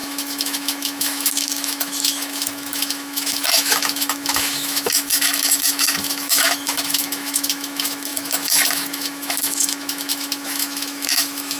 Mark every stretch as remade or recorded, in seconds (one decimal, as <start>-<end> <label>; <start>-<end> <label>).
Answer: 0.0-11.6 remade